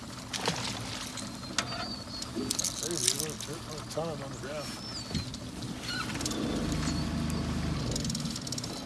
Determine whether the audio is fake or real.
real